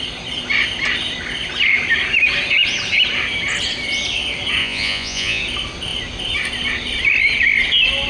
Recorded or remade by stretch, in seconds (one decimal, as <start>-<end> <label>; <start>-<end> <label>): 0.0-4.6 recorded; 4.6-5.4 remade; 5.4-8.1 recorded